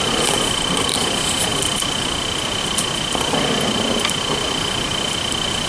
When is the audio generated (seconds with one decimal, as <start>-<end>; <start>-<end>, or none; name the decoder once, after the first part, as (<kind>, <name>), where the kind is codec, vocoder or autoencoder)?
none